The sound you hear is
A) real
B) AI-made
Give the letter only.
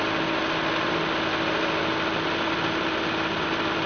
A